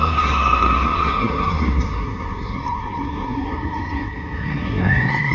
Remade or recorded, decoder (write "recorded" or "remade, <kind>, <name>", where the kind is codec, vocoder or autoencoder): remade, codec, SNAC